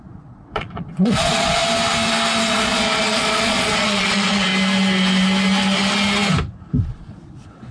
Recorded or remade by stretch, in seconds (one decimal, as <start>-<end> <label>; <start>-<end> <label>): 0.0-1.6 remade; 1.6-2.5 recorded; 2.5-4.5 remade; 4.5-6.8 recorded; 6.8-7.7 remade

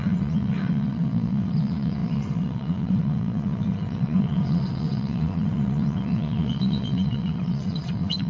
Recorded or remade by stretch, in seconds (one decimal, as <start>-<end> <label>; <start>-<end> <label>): 0.0-8.3 remade

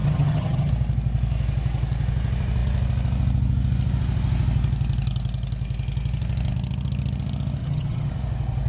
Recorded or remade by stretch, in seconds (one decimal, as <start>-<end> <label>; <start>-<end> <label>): 0.0-0.7 remade; 0.7-7.6 recorded; 7.6-8.1 remade; 8.1-8.7 recorded

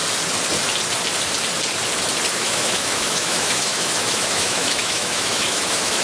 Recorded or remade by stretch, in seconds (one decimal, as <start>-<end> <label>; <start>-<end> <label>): 0.0-2.3 recorded; 2.3-6.0 remade

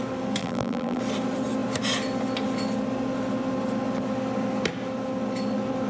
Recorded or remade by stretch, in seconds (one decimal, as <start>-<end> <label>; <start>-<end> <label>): 0.0-0.4 recorded; 0.4-1.0 remade; 1.0-5.9 recorded

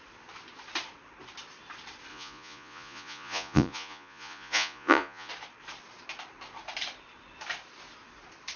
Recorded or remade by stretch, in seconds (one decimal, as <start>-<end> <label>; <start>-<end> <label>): 0.0-2.1 recorded; 2.1-5.3 remade; 5.3-8.6 recorded

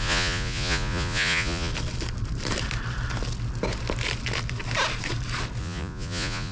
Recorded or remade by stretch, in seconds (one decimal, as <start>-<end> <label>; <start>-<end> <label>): 0.0-1.7 remade; 1.7-5.6 recorded; 5.6-6.5 remade